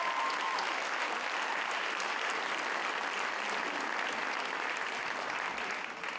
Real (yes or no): yes